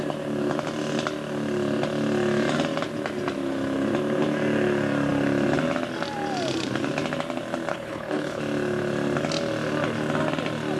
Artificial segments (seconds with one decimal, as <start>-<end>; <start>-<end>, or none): 7.7-8.4